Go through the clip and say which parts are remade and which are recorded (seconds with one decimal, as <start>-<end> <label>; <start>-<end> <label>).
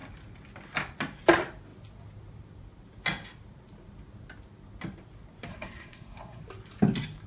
0.0-5.5 recorded; 5.5-6.4 remade; 6.4-7.3 recorded